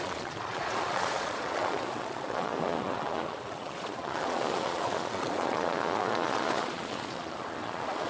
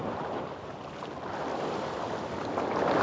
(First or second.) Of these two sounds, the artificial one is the first